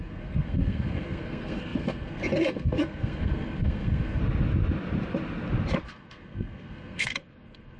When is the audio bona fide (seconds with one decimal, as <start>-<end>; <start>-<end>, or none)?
4.2-5.8